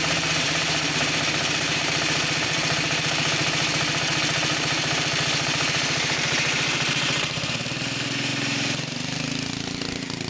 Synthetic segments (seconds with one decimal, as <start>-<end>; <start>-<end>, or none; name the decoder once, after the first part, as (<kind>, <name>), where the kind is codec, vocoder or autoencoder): 0.0-3.4 (vocoder, BigVGAN v2); 4.8-10.3